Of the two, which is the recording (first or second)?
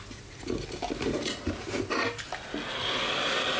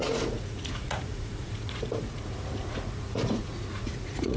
first